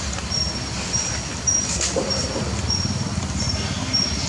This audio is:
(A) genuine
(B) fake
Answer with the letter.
B